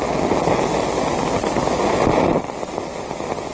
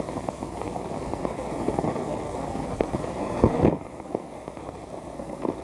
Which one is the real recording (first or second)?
first